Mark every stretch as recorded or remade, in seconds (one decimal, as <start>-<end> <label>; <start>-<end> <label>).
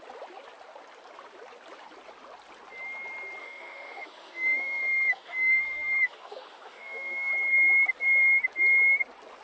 0.0-3.4 recorded; 3.4-7.3 remade; 7.3-9.4 recorded